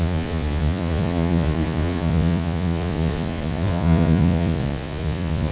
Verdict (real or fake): fake